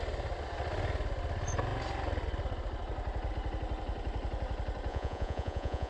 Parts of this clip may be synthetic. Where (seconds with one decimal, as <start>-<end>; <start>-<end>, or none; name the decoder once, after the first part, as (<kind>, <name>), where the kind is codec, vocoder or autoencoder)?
4.9-5.9 (vocoder, Vocos)